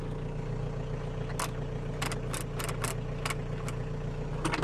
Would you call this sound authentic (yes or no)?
yes